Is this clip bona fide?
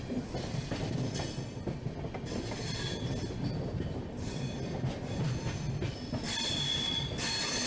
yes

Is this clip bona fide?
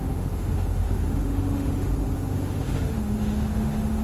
no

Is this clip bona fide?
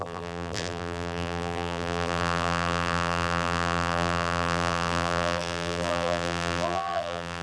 no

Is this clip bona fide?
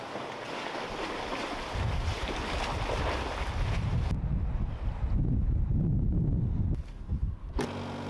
yes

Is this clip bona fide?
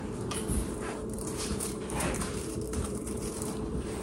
no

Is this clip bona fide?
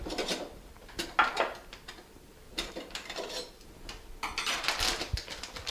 yes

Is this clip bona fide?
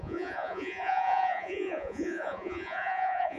no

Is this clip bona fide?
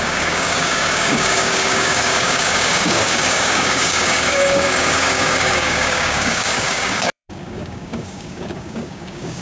no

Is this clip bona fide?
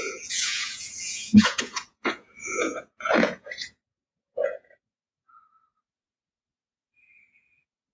no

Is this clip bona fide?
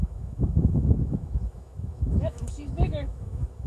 no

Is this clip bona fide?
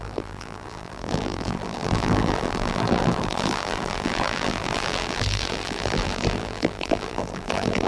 no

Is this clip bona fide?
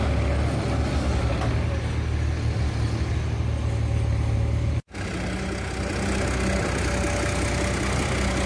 yes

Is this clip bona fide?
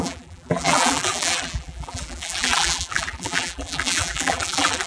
no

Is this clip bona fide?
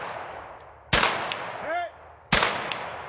yes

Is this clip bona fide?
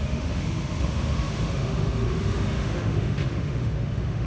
no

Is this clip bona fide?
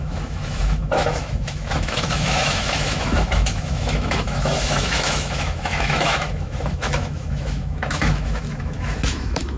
no